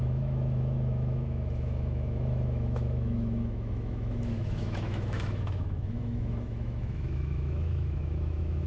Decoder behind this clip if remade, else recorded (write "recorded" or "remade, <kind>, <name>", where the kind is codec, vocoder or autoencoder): remade, autoencoder, DAC-VAE